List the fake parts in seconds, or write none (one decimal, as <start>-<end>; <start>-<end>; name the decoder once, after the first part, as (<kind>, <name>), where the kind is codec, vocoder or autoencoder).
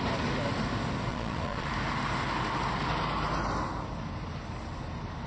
1.1-1.7 (vocoder, Vocos)